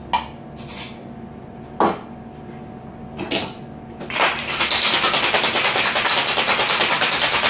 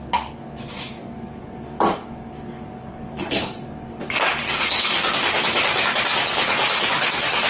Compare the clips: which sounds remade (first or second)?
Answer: second